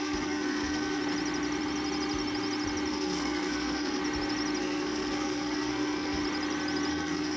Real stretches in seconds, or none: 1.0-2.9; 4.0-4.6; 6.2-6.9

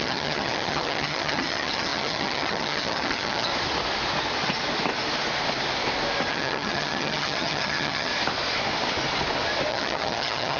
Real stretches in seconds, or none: 3.5-6.3; 8.1-9.7

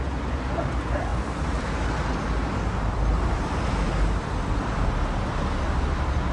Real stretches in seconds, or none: 0.0-1.1; 4.9-6.3

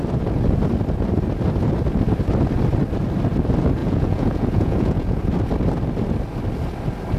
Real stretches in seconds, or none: 0.0-3.8; 5.2-7.2

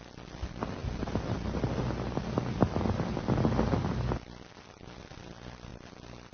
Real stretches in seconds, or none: 0.0-6.3

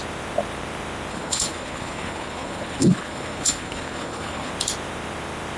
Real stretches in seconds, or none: 0.0-1.1; 4.5-5.6

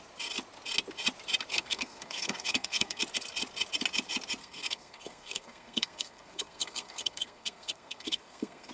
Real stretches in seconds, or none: 0.0-1.5; 3.0-4.4

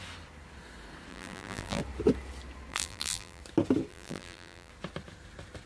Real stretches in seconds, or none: 0.0-1.1; 1.8-2.7; 3.4-3.9; 4.7-5.7